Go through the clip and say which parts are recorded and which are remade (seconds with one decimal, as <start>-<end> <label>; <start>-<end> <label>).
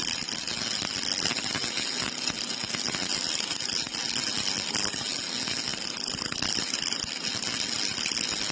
0.0-8.5 recorded